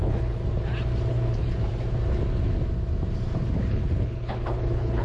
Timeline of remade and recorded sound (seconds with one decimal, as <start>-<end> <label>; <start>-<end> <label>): 0.0-0.4 remade; 0.4-1.1 recorded; 1.1-1.5 remade; 1.5-3.7 recorded; 3.7-5.0 remade